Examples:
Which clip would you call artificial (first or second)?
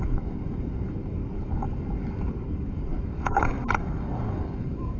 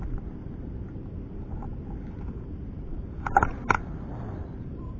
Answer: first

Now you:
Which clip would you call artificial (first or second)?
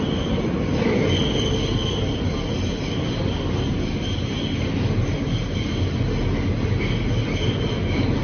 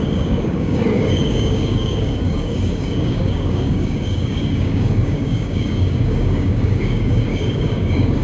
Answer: second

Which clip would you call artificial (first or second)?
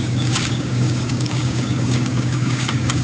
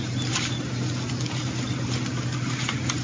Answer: first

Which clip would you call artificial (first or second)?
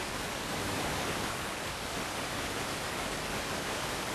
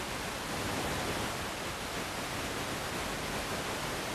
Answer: first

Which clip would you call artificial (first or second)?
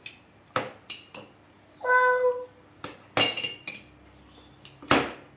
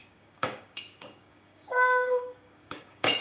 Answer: second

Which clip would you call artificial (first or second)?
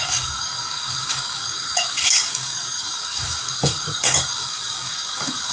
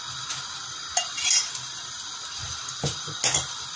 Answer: first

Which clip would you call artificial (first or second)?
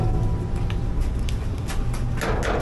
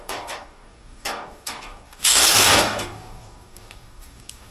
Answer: second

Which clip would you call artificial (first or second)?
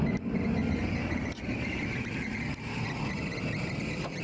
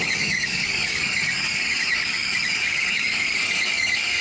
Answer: second